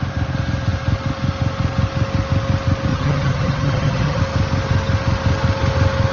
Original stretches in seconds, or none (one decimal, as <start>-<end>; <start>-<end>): 0.0-2.9; 4.2-6.1